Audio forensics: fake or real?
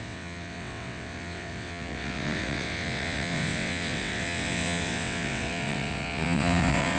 fake